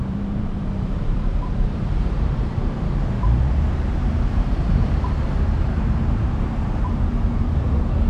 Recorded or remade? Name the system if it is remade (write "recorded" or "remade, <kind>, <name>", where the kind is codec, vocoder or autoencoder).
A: remade, vocoder, BigVGAN v2